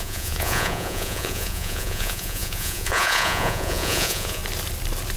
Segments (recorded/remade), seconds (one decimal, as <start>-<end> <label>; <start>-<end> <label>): 0.0-4.4 remade; 4.4-5.2 recorded